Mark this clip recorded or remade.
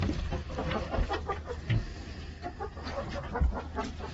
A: recorded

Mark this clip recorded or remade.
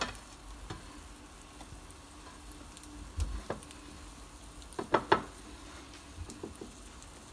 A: recorded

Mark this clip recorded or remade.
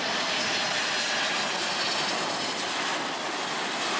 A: recorded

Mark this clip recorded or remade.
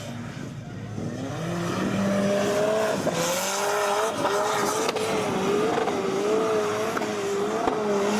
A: recorded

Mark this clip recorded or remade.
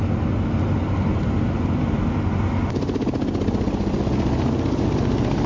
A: recorded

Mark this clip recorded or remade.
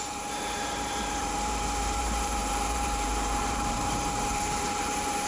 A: remade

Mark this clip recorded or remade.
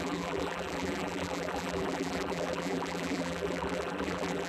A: remade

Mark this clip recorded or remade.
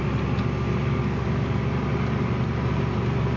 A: recorded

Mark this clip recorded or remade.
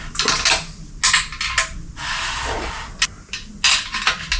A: recorded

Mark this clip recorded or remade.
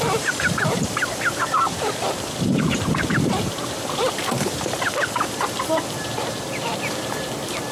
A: remade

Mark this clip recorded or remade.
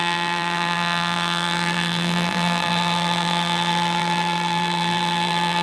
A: remade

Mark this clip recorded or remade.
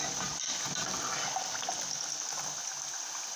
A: recorded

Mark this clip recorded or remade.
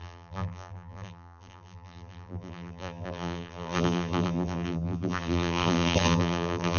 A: remade